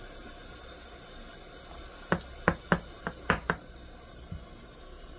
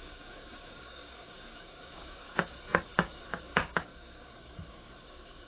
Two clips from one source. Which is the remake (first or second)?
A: second